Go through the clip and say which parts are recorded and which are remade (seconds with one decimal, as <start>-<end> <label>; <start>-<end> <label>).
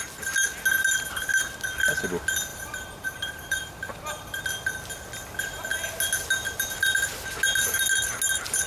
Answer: 0.0-2.5 recorded; 2.5-4.4 remade; 4.4-8.7 recorded